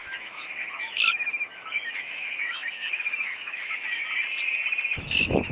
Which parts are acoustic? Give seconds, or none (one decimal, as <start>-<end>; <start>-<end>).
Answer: 4.0-5.0